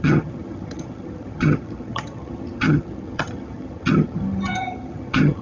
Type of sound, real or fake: fake